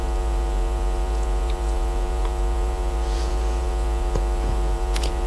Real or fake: fake